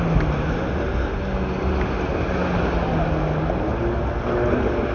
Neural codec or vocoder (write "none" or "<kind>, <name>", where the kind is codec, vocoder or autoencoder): none